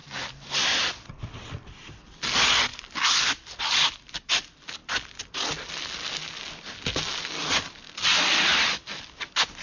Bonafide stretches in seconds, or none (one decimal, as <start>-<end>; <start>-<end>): 1.1-2.7; 4.3-9.6